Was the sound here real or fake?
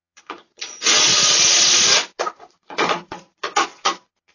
fake